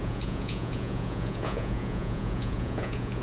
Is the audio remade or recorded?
remade